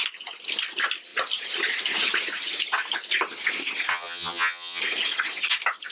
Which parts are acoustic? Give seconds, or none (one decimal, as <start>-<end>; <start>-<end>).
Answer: 0.0-3.9; 4.8-5.9